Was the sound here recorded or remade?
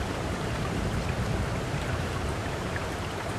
remade